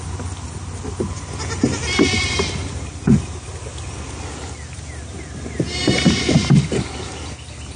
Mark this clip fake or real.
real